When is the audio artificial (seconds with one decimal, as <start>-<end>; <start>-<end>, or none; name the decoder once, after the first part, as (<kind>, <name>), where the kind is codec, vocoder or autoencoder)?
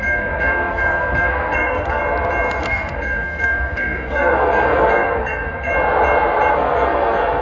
0.0-2.0 (codec, SNAC); 2.6-5.7; 6.5-7.4